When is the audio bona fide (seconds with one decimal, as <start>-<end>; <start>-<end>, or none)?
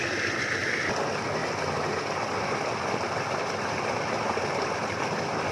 0.0-5.5